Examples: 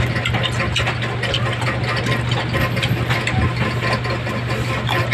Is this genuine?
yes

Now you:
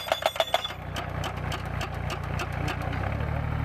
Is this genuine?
yes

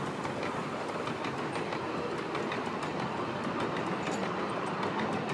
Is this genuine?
yes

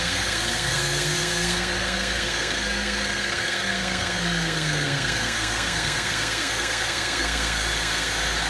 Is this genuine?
no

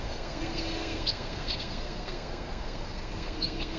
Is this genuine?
no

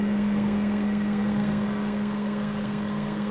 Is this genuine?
no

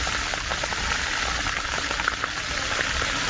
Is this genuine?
yes